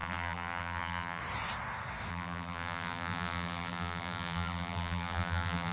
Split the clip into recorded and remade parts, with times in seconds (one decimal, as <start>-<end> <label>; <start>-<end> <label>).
0.0-1.2 remade; 1.2-2.1 recorded; 2.1-5.7 remade